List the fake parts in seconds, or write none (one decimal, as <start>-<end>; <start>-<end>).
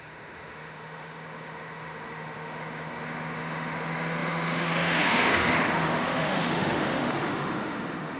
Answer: 0.0-8.2